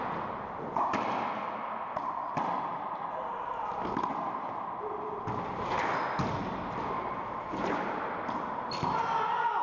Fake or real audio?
real